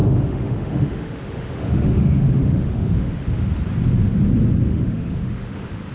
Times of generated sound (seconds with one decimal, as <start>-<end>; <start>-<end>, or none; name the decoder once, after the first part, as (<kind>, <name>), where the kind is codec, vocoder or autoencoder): 0.0-3.5 (autoencoder, DAC-VAE); 4.7-5.9